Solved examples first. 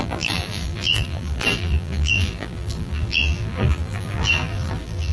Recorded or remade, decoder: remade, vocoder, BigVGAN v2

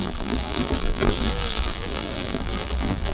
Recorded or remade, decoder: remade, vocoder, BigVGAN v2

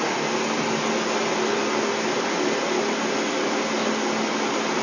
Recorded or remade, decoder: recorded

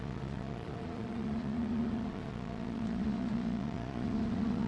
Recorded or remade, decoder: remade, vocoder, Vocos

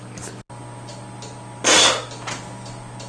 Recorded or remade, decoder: recorded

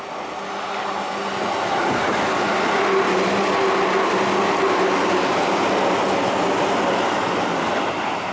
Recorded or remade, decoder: recorded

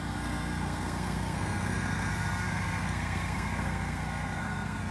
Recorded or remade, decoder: remade, codec, SNAC